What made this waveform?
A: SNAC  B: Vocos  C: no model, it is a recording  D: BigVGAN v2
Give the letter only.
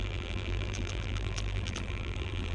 D